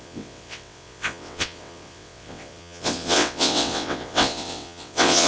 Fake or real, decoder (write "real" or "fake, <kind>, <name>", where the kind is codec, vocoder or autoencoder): fake, vocoder, WaveNeXt